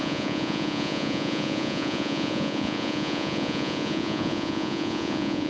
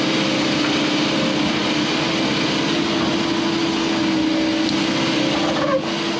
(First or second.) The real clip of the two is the second